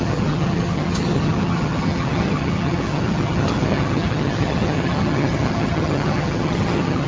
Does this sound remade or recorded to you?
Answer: remade